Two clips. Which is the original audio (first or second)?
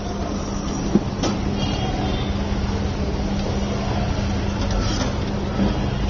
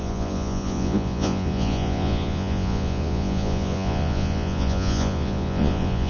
first